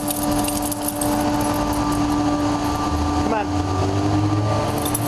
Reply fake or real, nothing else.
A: real